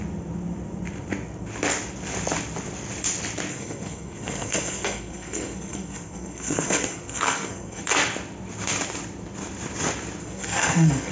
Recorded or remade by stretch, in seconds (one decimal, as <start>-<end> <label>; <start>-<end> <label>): 0.0-3.5 recorded; 3.5-7.8 remade; 7.8-10.2 recorded; 10.2-11.1 remade